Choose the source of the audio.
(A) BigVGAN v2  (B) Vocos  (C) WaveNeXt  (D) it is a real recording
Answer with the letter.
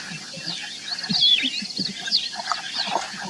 D